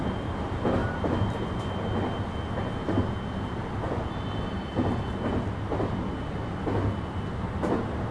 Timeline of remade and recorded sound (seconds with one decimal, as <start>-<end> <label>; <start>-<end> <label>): 0.0-0.8 recorded; 0.8-1.6 remade; 1.6-8.1 recorded